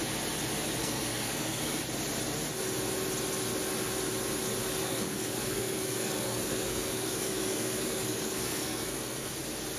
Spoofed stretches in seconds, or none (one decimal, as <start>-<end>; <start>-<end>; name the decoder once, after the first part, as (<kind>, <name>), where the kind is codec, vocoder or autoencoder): 0.8-1.8 (codec, SNAC); 4.8-9.3